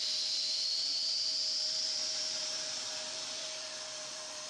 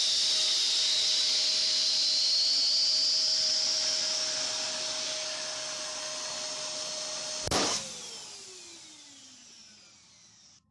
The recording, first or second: second